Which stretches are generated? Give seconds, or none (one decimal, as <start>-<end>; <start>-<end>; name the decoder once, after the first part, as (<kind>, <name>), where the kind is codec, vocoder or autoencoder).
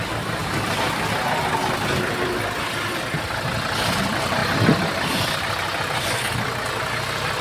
none